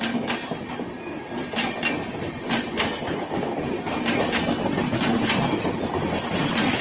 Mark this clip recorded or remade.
recorded